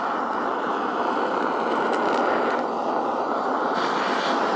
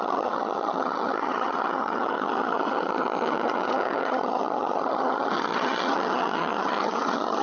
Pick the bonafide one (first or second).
first